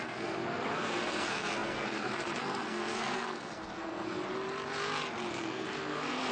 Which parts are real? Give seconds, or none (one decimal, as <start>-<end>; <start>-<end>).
4.2-5.3